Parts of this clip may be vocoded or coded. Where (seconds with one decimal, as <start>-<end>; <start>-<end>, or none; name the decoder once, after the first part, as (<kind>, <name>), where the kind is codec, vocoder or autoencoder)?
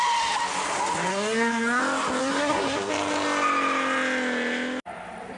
1.1-1.8 (codec, SNAC); 2.2-2.9